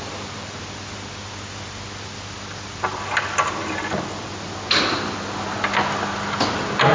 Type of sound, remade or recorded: recorded